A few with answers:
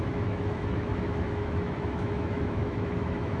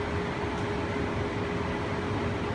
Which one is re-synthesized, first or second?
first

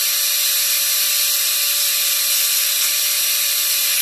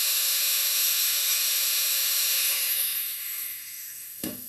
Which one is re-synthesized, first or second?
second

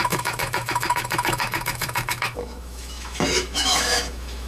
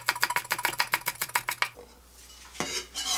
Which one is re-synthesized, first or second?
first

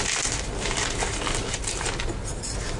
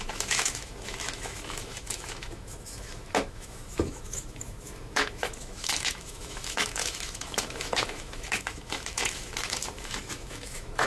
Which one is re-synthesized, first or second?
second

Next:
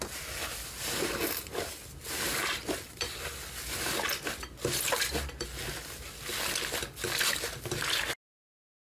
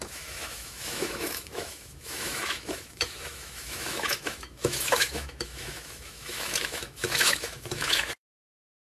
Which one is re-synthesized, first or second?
second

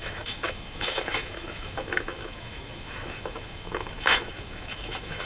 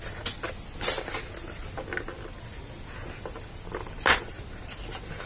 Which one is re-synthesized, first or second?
first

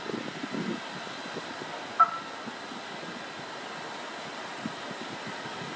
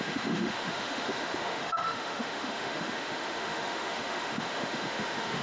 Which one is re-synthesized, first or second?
second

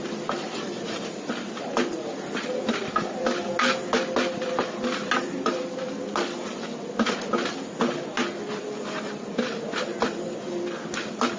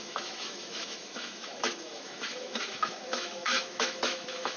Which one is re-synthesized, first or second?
second